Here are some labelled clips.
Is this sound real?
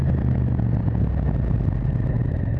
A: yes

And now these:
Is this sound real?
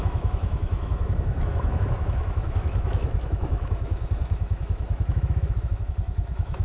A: no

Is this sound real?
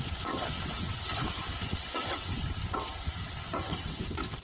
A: no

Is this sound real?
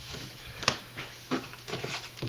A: no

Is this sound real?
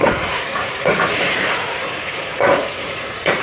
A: no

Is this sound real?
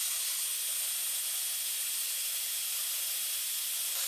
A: yes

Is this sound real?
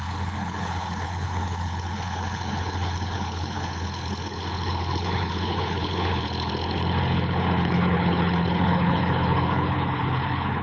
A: no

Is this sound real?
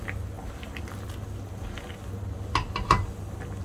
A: yes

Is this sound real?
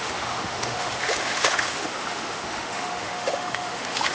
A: no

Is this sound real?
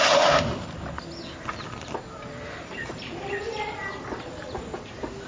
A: yes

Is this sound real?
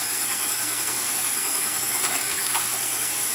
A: no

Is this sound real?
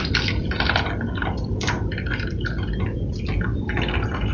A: yes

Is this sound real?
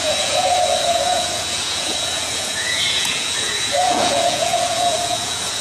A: no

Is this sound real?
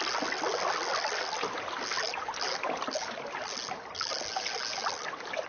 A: yes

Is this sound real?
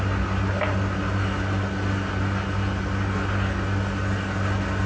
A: yes